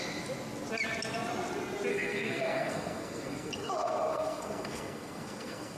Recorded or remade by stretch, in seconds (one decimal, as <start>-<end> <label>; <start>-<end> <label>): 0.0-1.9 recorded; 1.9-5.8 remade